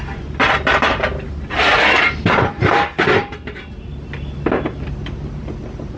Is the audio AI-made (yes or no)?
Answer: yes